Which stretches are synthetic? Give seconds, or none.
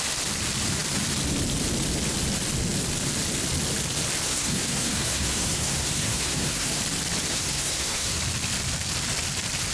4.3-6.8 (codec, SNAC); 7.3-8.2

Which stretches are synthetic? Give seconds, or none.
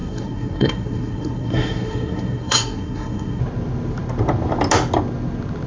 0.0-3.4 (codec, SNAC)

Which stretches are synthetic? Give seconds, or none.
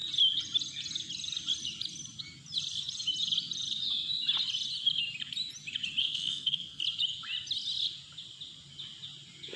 6.0-6.8 (codec, SNAC)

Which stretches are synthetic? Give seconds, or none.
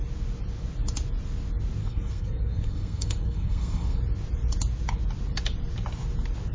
1.8-4.0 (codec, SNAC)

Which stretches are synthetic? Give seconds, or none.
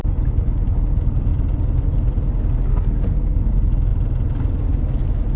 2.7-3.5 (codec, SNAC)